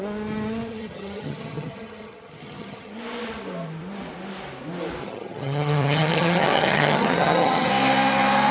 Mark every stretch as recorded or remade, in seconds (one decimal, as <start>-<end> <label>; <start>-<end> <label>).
0.0-0.7 recorded; 0.7-3.0 remade; 3.0-5.0 recorded; 5.0-7.7 remade; 7.7-8.5 recorded

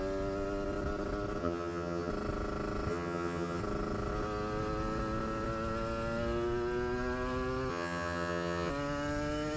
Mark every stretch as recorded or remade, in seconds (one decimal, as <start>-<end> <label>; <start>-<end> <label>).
0.0-1.4 recorded; 1.4-2.1 remade; 2.1-2.9 recorded; 2.9-3.6 remade; 3.6-7.7 recorded; 7.7-8.7 remade; 8.7-9.6 recorded

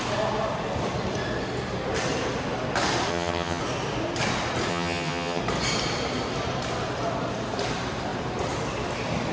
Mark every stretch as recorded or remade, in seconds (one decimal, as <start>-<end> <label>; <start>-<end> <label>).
0.0-3.1 recorded; 3.1-3.6 remade; 3.6-4.7 recorded; 4.7-5.4 remade; 5.4-9.3 recorded

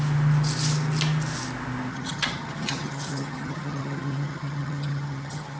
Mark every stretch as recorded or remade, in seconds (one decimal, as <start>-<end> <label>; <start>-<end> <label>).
0.0-1.9 recorded; 1.9-5.6 remade

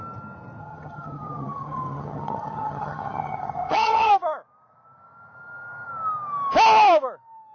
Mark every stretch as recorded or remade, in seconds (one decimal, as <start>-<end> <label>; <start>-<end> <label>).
0.0-0.6 recorded; 0.6-4.1 remade; 4.1-7.5 recorded

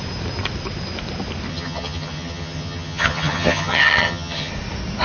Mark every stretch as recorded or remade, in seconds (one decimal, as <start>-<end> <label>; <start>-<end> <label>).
0.0-1.5 recorded; 1.5-4.5 remade; 4.5-5.0 recorded

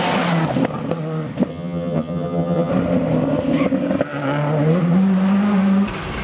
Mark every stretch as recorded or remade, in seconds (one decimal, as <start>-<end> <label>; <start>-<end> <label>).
0.0-1.5 recorded; 1.5-2.7 remade; 2.7-6.2 recorded

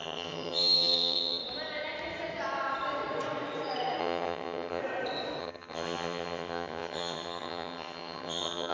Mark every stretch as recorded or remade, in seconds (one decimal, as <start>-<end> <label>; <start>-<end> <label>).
0.0-1.4 remade; 1.4-4.0 recorded; 4.0-4.8 remade; 4.8-5.4 recorded; 5.4-8.7 remade